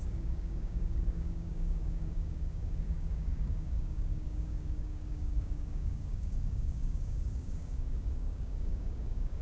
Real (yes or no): no